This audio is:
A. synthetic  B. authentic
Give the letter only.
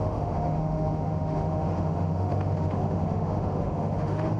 A